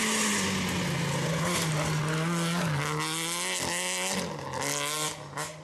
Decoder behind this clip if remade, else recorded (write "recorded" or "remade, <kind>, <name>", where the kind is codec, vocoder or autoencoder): recorded